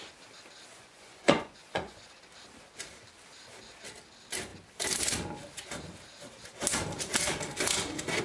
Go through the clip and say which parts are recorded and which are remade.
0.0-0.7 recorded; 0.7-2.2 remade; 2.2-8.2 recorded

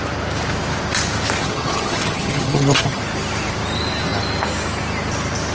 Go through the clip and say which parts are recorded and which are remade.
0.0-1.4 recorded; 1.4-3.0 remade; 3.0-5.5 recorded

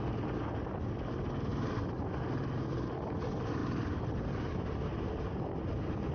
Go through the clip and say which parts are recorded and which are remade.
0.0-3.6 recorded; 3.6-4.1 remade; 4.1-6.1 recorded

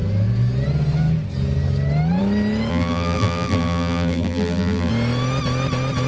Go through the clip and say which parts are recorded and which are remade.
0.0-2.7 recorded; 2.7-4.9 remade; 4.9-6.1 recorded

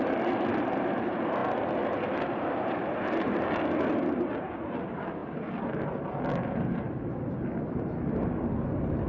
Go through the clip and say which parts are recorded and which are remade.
0.0-9.1 recorded

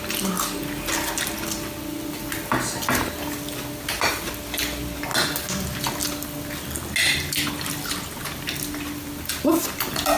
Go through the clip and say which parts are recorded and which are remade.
0.0-10.2 recorded

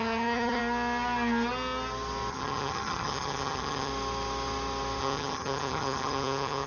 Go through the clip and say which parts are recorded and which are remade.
0.0-0.6 remade; 0.6-2.3 recorded; 2.3-3.9 remade; 3.9-5.0 recorded; 5.0-6.7 remade